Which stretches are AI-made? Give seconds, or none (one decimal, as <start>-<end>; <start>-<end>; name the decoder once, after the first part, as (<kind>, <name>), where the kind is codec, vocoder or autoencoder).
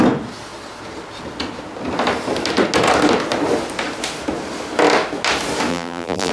5.7-6.3 (vocoder, BigVGAN v2)